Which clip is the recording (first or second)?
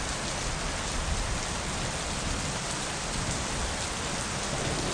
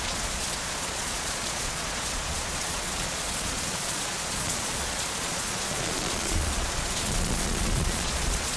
first